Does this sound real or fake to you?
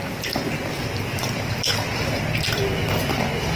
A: real